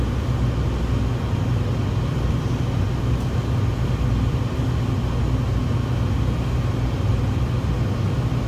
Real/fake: real